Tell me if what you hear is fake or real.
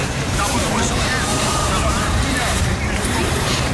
fake